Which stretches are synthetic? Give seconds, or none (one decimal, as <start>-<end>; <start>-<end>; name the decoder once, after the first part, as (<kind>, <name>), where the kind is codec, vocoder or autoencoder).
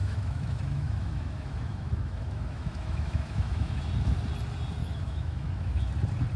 0.0-3.8 (autoencoder, DAC-VAE); 4.8-5.9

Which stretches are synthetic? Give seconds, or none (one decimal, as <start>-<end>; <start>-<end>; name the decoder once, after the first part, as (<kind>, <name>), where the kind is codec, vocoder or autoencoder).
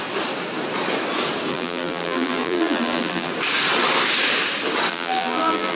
1.5-3.3 (vocoder, BigVGAN v2); 4.9-5.8